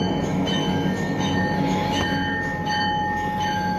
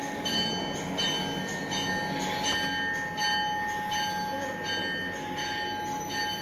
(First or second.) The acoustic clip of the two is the second